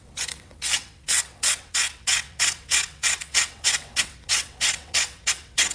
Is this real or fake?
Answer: fake